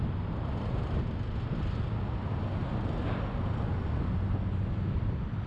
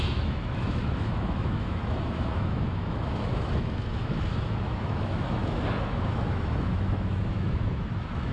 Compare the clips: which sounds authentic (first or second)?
first